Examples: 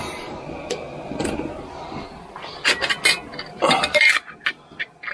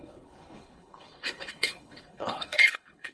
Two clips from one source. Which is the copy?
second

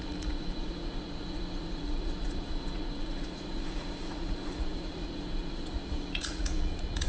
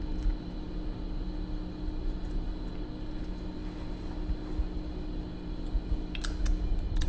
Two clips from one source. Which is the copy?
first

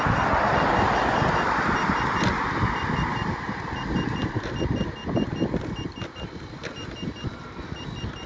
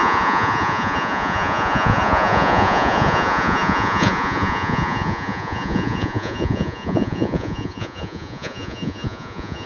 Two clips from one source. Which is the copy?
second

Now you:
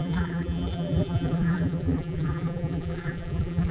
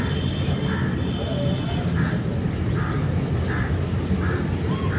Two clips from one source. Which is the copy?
first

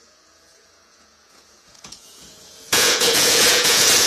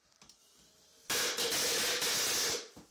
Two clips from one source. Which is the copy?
first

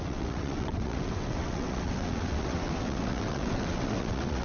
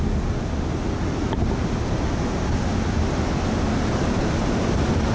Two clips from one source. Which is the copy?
first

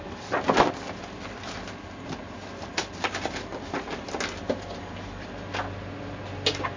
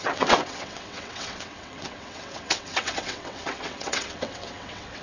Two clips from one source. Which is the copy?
second